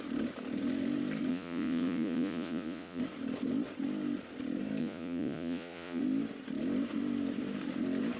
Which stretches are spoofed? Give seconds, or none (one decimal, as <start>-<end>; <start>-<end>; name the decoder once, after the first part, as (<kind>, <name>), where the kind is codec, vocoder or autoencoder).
1.3-3.0 (vocoder, Vocos); 4.8-6.0